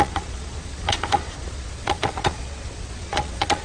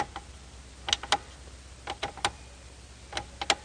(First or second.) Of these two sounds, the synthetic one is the first